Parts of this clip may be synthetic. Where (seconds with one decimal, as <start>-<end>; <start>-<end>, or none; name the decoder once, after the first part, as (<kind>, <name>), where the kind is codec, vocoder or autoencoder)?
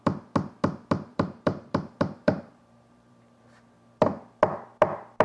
1.1-3.4 (vocoder, BigVGAN v2)